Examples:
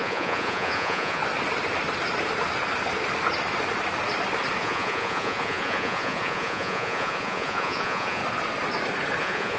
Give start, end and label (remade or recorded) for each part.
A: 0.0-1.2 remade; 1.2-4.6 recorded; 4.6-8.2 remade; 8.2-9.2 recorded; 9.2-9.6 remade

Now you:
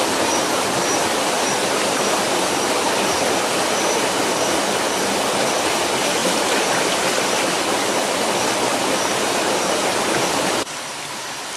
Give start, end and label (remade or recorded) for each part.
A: 0.0-11.6 recorded

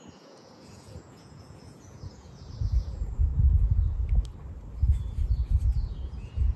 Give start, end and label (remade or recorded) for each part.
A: 0.0-3.3 remade; 3.3-5.9 recorded; 5.9-6.6 remade